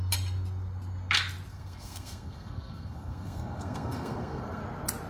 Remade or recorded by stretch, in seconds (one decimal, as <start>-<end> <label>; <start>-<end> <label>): 0.0-1.5 recorded; 1.5-4.6 remade; 4.6-5.1 recorded